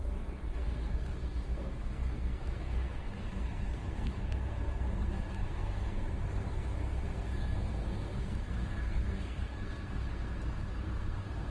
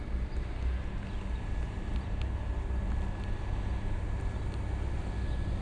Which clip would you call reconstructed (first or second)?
first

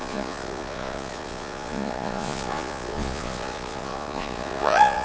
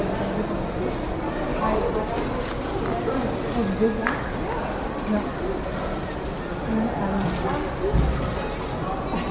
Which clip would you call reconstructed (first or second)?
first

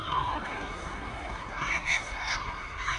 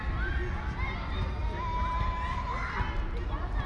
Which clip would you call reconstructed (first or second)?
first